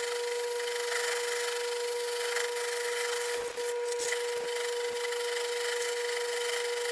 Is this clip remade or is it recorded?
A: recorded